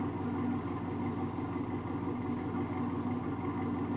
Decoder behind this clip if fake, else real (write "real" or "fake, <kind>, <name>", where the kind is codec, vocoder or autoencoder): real